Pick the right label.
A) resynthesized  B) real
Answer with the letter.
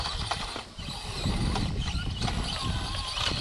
B